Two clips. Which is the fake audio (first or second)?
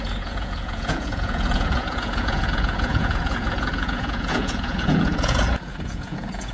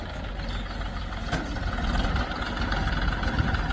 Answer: first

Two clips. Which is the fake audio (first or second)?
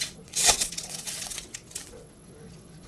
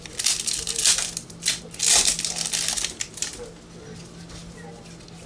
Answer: first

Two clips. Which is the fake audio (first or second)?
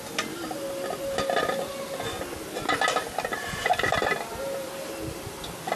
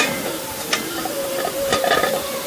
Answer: second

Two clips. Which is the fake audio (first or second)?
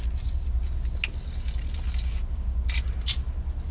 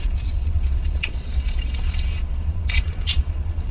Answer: second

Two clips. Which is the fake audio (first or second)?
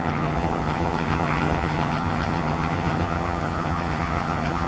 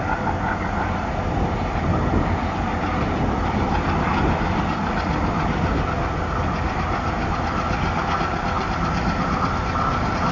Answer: first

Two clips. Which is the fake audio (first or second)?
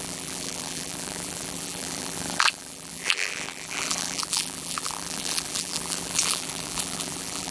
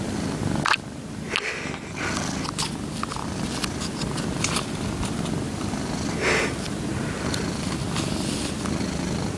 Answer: first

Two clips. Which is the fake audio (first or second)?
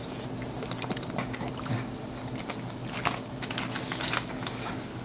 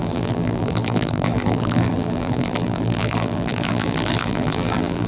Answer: second